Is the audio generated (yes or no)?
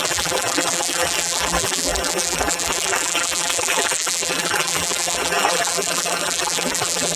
yes